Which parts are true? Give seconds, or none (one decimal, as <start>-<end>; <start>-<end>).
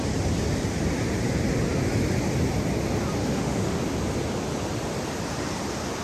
0.0-3.2; 3.8-6.0